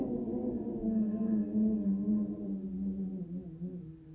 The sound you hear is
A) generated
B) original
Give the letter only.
B